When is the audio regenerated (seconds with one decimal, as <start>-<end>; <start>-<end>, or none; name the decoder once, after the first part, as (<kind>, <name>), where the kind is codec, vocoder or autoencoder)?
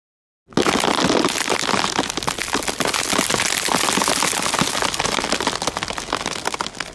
none